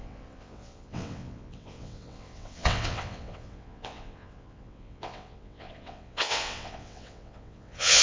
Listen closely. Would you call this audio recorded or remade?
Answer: remade